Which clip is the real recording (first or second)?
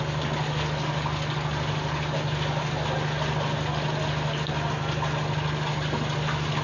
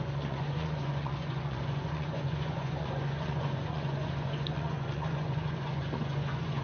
first